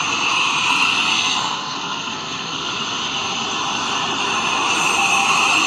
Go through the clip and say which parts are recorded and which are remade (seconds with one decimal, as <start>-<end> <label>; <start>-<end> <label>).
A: 0.0-1.1 recorded; 1.1-2.7 remade; 2.7-5.7 recorded